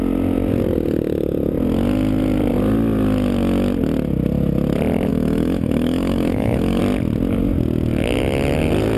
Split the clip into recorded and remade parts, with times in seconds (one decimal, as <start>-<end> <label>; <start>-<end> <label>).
0.0-5.1 recorded; 5.1-6.8 remade; 6.8-9.0 recorded

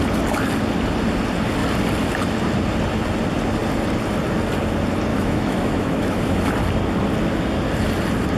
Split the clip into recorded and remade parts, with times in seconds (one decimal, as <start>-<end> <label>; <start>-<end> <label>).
0.0-5.1 recorded; 5.1-6.5 remade; 6.5-8.4 recorded

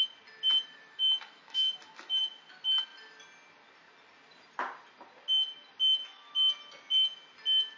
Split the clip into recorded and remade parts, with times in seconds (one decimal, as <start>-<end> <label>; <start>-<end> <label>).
0.0-0.6 recorded; 0.6-2.2 remade; 2.2-7.8 recorded

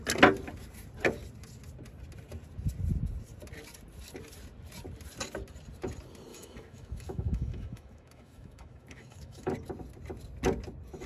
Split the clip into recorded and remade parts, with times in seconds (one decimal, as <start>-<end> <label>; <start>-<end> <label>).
0.0-6.3 recorded; 6.3-9.5 remade; 9.5-11.1 recorded

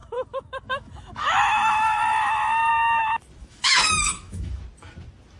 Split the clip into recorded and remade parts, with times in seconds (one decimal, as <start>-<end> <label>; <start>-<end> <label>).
0.0-2.7 remade; 2.7-3.4 recorded; 3.4-4.6 remade; 4.6-5.4 recorded

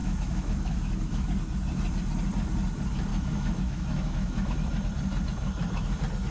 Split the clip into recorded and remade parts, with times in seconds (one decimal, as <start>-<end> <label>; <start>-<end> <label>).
0.0-1.3 remade; 1.3-3.1 recorded; 3.1-4.7 remade; 4.7-6.3 recorded

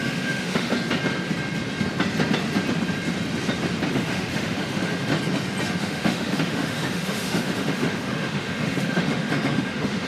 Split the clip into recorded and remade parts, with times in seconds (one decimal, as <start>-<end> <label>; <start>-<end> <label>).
0.0-0.7 remade; 0.7-3.9 recorded; 3.9-5.1 remade; 5.1-5.8 recorded; 5.8-10.1 remade